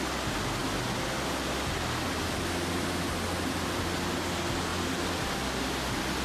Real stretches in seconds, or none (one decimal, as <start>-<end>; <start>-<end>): 0.0-6.2